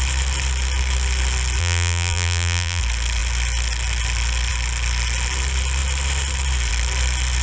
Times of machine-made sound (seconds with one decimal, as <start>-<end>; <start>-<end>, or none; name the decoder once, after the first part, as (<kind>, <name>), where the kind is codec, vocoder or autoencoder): 1.6-2.8 (vocoder, BigVGAN v2)